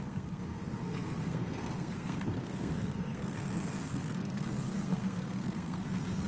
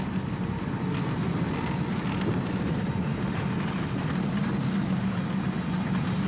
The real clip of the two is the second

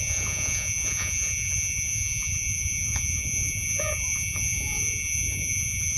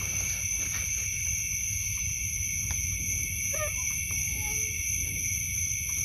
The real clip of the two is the second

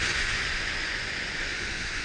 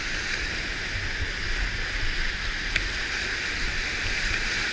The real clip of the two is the second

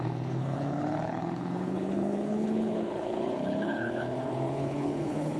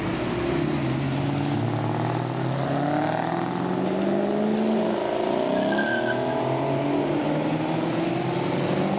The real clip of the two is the second